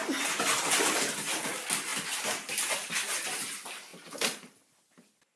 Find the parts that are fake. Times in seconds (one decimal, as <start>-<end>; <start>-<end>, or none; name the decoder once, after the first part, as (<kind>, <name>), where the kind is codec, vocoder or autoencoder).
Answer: none